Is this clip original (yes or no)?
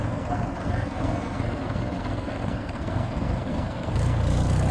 no